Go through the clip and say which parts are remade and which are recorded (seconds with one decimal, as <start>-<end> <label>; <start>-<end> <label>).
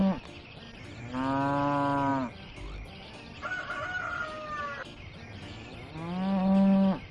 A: 0.0-7.1 recorded